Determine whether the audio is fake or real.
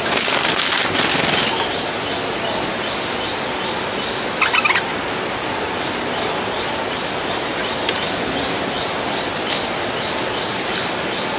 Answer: real